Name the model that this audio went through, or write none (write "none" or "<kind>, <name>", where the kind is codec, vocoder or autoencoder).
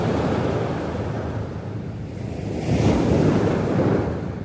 vocoder, BigVGAN v2